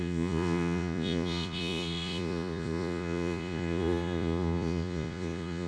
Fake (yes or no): yes